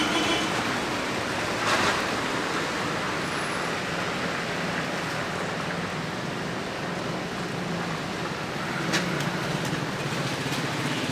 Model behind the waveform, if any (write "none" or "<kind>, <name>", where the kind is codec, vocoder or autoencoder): none